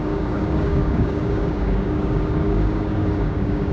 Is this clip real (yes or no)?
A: no